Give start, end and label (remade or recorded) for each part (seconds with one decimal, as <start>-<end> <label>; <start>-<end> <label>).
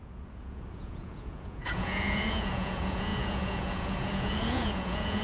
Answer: 0.0-5.2 remade